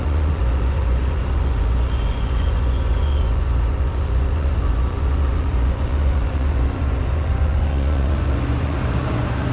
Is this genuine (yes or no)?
no